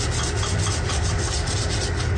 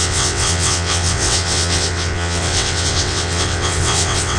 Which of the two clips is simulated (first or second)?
second